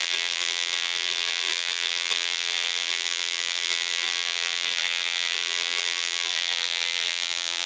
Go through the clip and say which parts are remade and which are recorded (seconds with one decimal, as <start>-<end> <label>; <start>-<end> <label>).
0.0-7.7 remade

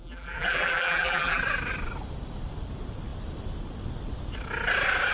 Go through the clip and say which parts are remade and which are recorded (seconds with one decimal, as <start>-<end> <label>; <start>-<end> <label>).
0.0-1.4 remade; 1.4-5.1 recorded

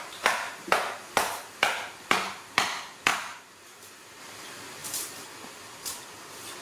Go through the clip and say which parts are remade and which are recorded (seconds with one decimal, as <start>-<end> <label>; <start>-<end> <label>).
0.0-4.8 remade; 4.8-6.6 recorded

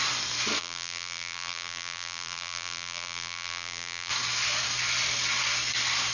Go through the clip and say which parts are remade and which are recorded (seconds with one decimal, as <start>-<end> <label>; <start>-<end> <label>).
0.0-0.6 recorded; 0.6-4.1 remade; 4.1-6.1 recorded

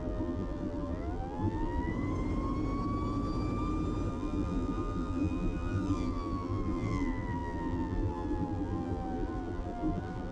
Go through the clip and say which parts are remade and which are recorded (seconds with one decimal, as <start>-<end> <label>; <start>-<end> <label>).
0.0-1.9 remade; 1.9-4.1 recorded; 4.1-10.3 remade

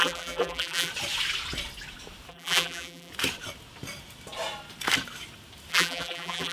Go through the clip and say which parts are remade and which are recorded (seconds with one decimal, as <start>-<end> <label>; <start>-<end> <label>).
0.0-0.9 remade; 0.9-2.3 recorded; 2.3-3.1 remade; 3.1-5.7 recorded; 5.7-6.5 remade

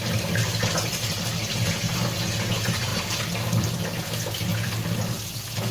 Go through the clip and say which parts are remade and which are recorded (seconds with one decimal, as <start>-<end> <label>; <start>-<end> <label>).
0.0-5.7 recorded